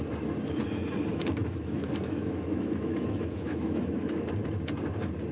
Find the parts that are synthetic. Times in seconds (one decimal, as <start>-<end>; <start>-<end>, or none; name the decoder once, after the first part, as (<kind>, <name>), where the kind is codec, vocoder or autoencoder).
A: 1.1-4.3 (autoencoder, DAC-VAE)